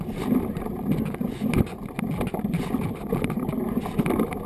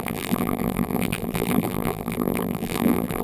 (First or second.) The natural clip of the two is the first